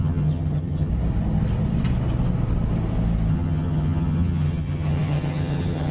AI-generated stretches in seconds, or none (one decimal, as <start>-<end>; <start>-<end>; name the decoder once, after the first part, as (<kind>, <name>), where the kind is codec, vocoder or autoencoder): 0.0-0.9 (vocoder, HiFi-GAN); 3.3-5.9

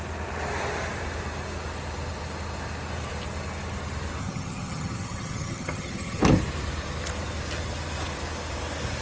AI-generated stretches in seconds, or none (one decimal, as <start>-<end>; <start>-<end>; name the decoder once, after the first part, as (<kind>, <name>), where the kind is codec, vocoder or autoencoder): 4.2-6.2 (vocoder, HiFi-GAN)

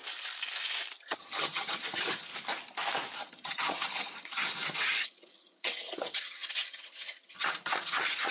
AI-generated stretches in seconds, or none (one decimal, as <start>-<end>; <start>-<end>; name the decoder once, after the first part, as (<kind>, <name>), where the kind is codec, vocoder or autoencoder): 1.0-2.3 (vocoder, HiFi-GAN); 3.2-8.3

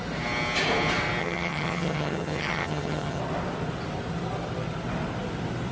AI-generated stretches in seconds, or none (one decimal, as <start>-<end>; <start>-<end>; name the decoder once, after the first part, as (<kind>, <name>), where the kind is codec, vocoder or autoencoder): 1.2-3.2 (vocoder, HiFi-GAN)

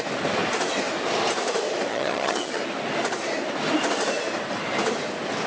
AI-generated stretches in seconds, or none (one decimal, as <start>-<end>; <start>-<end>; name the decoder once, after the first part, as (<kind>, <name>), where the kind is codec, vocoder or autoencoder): 1.9-2.6 (vocoder, HiFi-GAN)

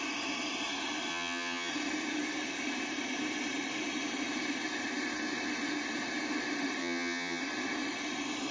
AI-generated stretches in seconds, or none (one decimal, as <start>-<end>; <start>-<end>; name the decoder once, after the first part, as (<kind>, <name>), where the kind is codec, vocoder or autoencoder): 1.1-1.7 (vocoder, HiFi-GAN); 6.8-7.4

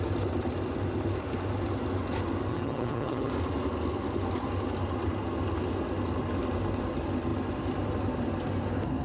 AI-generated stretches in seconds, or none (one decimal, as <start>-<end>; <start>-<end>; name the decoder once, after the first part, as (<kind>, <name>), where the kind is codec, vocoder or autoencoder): 2.5-3.3 (vocoder, HiFi-GAN)